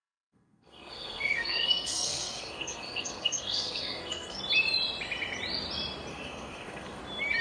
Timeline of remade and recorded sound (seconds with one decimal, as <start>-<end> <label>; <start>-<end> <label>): 0.0-4.4 remade; 4.4-6.1 recorded; 6.1-7.0 remade; 7.0-7.4 recorded